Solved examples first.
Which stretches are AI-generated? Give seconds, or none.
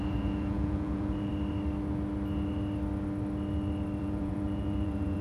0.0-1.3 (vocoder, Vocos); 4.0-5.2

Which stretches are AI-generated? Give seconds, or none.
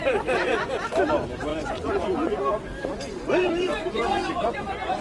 0.0-0.7 (vocoder, Vocos); 1.5-2.3; 3.2-5.0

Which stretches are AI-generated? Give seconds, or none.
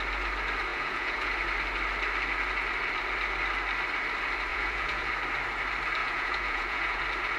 0.7-1.3 (vocoder, Vocos); 4.5-5.1; 6.0-7.0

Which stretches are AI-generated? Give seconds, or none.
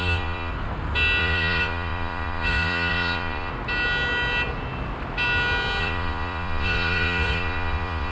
0.0-0.5 (vocoder, Vocos); 1.2-3.5; 5.8-8.1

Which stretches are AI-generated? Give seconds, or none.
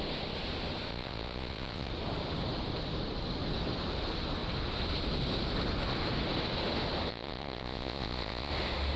0.9-1.9 (vocoder, Vocos); 7.1-8.5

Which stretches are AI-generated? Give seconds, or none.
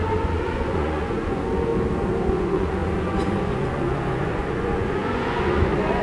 0.0-1.7 (vocoder, Vocos); 2.3-6.0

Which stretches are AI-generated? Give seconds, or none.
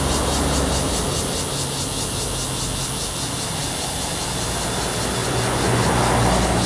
5.2-5.9 (vocoder, Vocos)